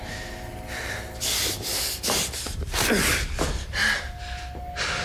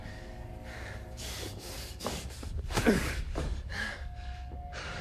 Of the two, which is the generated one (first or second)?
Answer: second